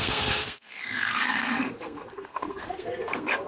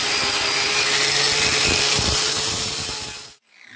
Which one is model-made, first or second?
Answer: first